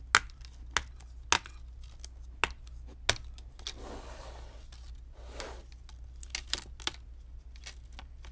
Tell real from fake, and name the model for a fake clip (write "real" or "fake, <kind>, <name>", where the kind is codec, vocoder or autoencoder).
real